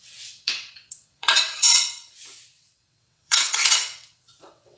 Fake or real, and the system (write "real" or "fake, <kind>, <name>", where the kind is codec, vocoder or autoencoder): fake, vocoder, WaveNeXt